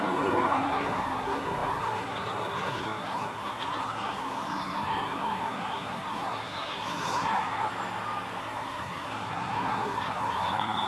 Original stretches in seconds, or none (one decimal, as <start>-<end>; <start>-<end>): 7.7-8.4